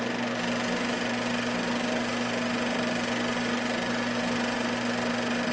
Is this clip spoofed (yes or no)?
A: no